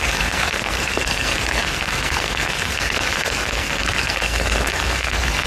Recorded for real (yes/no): no